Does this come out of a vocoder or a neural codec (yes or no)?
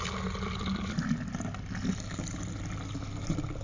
no